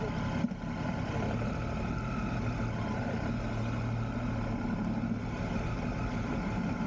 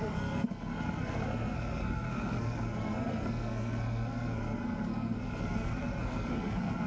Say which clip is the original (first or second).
first